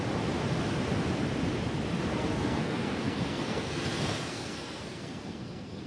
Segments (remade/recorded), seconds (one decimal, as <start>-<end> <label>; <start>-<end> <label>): 0.0-2.1 recorded; 2.1-5.9 remade